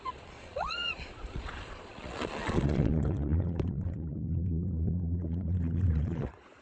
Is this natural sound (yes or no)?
no